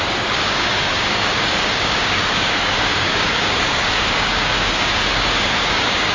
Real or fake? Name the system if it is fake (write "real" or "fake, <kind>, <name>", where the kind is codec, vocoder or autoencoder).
fake, codec, DAC